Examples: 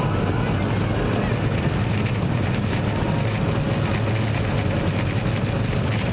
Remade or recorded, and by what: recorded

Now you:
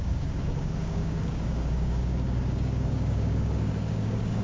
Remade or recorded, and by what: remade, codec, DAC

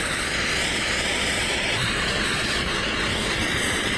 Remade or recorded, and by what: remade, vocoder, Vocos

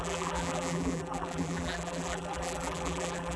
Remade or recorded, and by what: remade, vocoder, BigVGAN v2